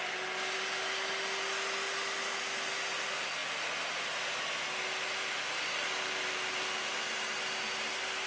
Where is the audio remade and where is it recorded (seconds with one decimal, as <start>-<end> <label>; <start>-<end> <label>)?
0.0-8.3 recorded